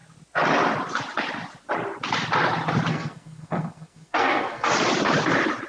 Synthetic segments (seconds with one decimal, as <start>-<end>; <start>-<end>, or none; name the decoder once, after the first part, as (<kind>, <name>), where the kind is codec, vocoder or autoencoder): 2.9-4.7 (codec, SNAC)

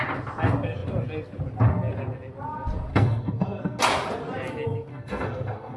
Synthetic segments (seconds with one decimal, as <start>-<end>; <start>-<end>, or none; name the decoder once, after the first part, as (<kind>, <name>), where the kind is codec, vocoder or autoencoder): 2.9-3.8 (codec, SNAC); 4.9-5.8

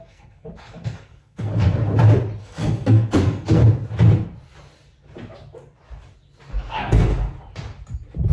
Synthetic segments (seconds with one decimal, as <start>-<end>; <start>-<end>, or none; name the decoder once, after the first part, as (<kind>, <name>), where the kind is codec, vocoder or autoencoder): 0.0-1.8 (codec, SNAC); 2.4-3.6; 6.5-7.1

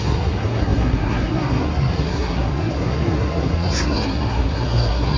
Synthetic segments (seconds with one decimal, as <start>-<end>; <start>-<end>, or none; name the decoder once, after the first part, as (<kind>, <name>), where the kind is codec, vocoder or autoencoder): 0.0-5.2 (codec, SNAC)

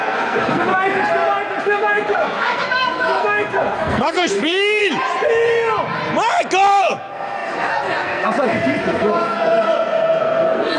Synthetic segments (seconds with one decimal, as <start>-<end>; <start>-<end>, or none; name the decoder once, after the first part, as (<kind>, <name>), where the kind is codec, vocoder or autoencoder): 0.0-0.7 (codec, SNAC); 1.6-4.8; 6.7-10.8

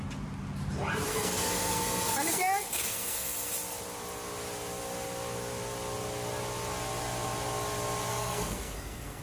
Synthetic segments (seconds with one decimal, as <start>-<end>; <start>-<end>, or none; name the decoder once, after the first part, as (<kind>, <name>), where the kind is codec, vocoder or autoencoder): 1.1-3.5 (codec, SNAC); 8.1-9.2